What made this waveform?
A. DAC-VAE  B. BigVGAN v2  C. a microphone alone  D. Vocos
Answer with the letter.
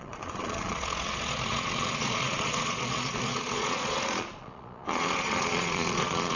D